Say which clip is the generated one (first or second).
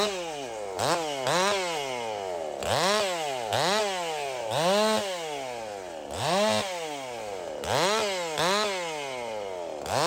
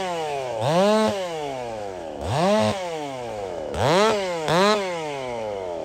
second